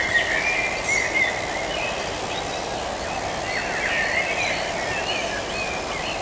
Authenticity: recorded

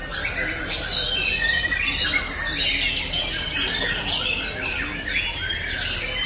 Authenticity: recorded